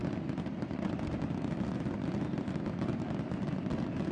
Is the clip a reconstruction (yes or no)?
no